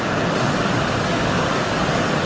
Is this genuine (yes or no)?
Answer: no